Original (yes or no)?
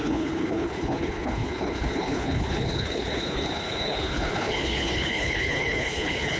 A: no